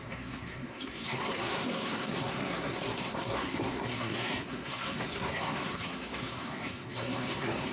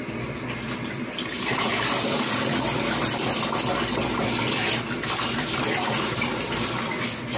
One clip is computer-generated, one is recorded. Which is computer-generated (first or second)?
first